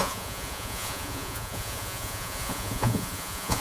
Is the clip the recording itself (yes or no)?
no